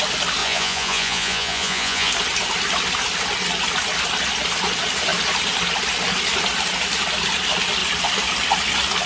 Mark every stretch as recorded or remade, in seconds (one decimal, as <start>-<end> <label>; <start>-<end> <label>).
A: 0.0-0.4 recorded; 0.4-2.1 remade; 2.1-9.1 recorded